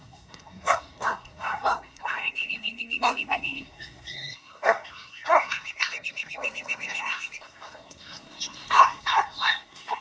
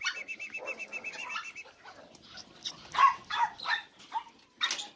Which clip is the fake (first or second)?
first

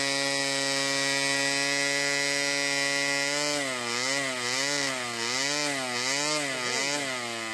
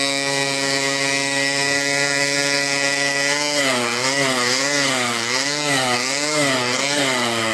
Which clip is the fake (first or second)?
second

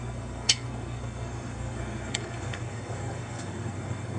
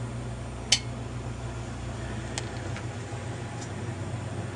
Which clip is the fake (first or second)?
first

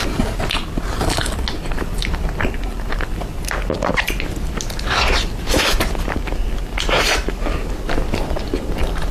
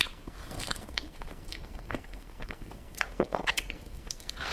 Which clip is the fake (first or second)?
second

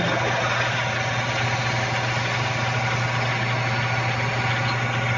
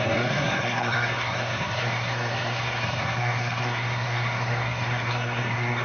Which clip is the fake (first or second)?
second